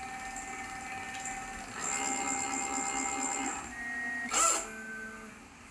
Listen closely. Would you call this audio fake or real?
real